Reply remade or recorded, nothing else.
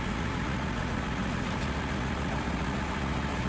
remade